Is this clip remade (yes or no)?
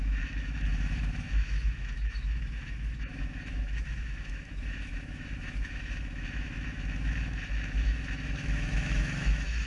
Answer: yes